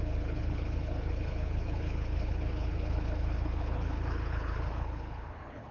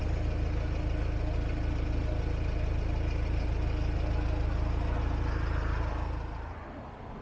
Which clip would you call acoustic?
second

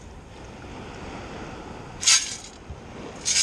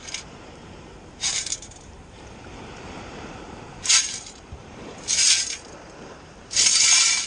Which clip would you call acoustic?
first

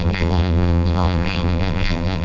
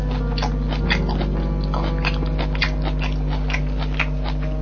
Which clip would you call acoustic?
second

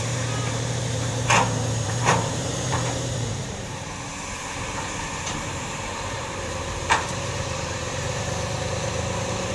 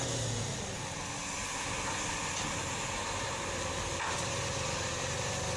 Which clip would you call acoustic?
second